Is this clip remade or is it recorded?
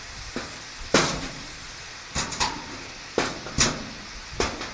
remade